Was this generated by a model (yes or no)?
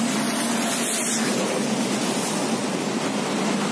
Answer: no